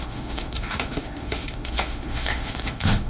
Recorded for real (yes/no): no